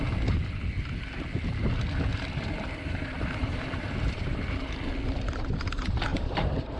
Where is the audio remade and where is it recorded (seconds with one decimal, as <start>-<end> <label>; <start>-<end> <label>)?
0.0-2.1 recorded; 2.1-4.7 remade; 4.7-6.1 recorded; 6.1-6.8 remade